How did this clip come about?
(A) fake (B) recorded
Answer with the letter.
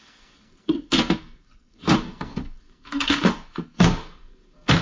A